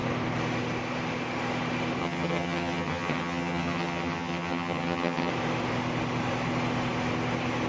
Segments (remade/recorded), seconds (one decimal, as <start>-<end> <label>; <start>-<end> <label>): 0.0-2.0 recorded; 2.0-5.3 remade; 5.3-7.7 recorded